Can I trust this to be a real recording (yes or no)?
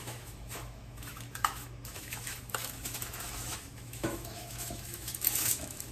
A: no